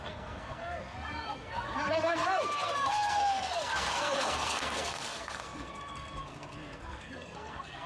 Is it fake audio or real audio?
fake